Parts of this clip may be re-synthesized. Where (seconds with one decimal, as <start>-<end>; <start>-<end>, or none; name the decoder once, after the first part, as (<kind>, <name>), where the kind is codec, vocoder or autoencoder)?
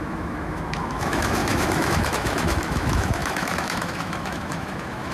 0.0-5.1 (autoencoder, DAC-VAE)